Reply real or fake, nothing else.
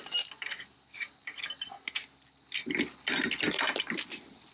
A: real